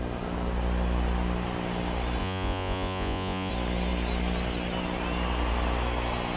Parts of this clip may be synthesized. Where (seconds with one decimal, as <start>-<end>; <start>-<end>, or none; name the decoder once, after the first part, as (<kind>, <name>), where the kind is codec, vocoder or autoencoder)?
2.2-3.5 (vocoder, Vocos)